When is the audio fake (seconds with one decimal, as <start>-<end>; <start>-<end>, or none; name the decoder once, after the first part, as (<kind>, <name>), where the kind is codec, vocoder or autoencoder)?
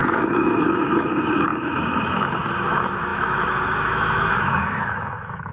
0.0-5.5 (autoencoder, DAC-VAE)